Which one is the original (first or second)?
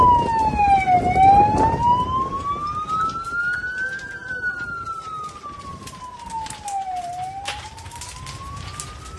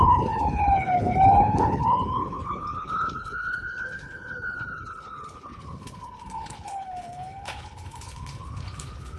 first